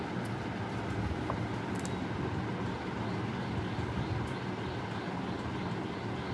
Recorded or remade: recorded